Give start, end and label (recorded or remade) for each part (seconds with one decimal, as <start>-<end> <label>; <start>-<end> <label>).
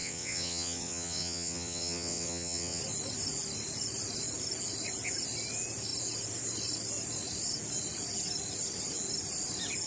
0.0-2.8 remade; 2.8-9.9 recorded